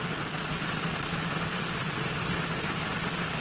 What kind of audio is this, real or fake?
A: real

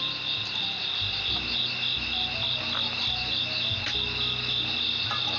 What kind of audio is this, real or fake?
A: real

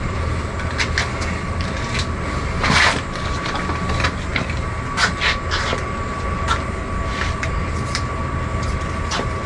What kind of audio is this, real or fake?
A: real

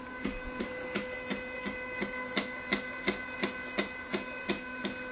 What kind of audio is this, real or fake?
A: real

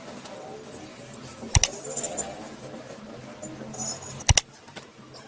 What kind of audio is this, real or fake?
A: real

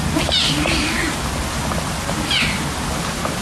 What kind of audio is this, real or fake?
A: real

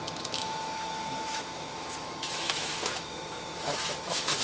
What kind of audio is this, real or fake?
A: fake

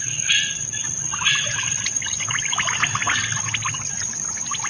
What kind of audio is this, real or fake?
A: real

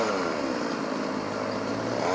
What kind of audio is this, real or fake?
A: real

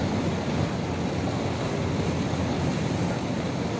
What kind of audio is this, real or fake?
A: real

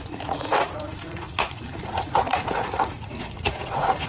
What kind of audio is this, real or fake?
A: fake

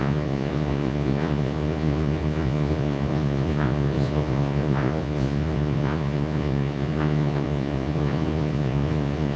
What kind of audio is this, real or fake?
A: fake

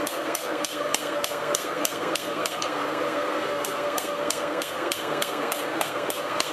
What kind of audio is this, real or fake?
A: fake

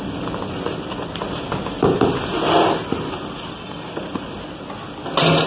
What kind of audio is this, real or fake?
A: real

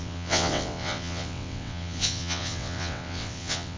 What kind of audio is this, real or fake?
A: fake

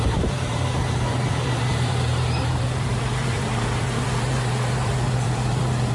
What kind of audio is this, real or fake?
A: fake